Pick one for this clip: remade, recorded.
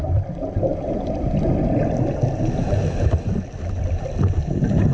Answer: recorded